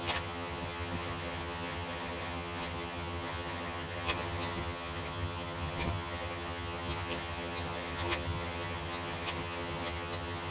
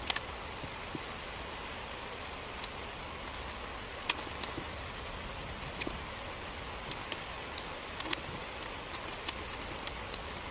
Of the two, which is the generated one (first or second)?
first